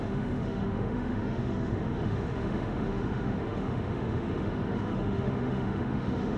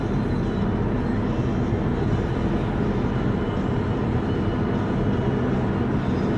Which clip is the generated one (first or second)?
first